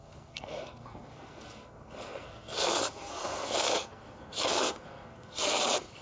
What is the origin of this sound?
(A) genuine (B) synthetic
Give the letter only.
B